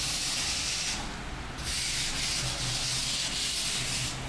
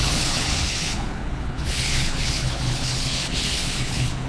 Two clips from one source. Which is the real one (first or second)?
first